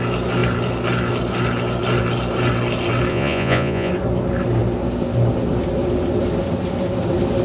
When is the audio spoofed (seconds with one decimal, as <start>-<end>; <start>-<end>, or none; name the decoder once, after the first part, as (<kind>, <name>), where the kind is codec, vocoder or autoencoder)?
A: 3.1-3.9 (vocoder, Vocos)